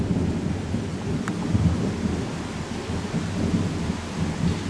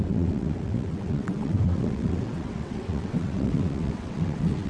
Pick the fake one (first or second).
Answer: second